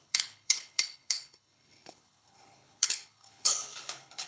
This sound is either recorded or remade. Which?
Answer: remade